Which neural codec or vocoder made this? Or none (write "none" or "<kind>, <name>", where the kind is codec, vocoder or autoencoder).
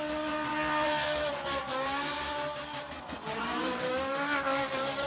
vocoder, BigVGAN v2